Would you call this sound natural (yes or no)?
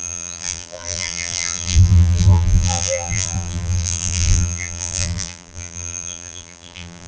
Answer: no